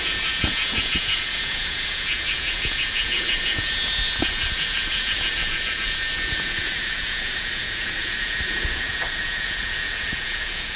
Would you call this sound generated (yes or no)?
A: yes